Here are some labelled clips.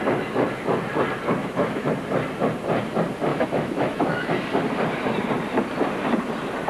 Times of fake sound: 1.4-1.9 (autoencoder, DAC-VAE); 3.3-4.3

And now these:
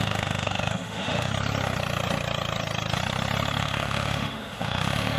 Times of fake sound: 0.0-1.3 (autoencoder, DAC-VAE); 3.6-5.2

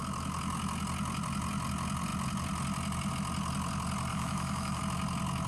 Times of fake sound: 4.1-4.8 (autoencoder, DAC-VAE)

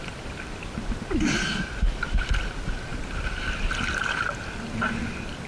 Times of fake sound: none

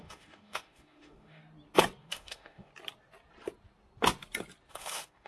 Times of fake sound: 0.0-1.4 (autoencoder, DAC-VAE); 2.0-2.7; 4.7-5.3

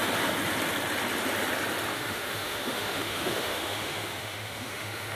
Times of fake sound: 1.9-5.2 (autoencoder, DAC-VAE)

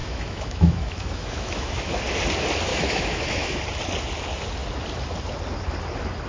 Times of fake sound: 0.0-2.0 (autoencoder, DAC-VAE); 2.7-3.6

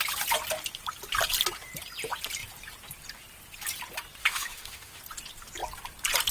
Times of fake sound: 4.2-5.0 (autoencoder, DAC-VAE)